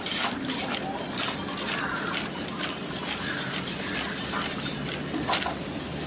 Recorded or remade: recorded